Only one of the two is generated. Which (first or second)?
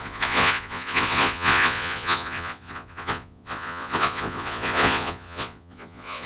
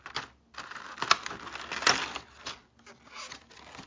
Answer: first